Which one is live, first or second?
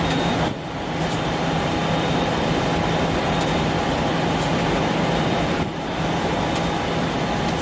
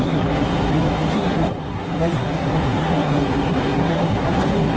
first